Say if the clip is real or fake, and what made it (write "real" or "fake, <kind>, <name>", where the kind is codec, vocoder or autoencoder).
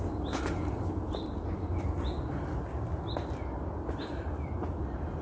real